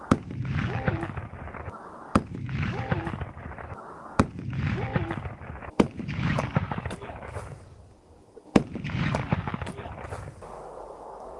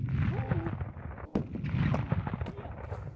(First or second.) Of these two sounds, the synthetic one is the first